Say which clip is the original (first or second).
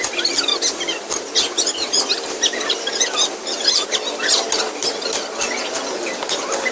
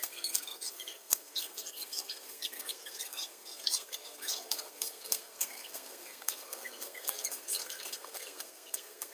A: first